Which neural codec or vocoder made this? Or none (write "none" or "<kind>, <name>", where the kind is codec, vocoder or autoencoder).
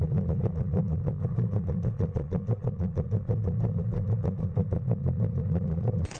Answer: vocoder, Vocos